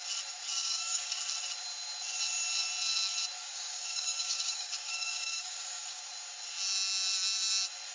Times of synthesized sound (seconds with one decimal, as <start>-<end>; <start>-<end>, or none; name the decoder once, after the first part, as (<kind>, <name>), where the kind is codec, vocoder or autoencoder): 0.5-1.2 (codec, DAC); 3.4-6.0